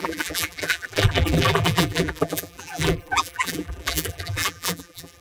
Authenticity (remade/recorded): remade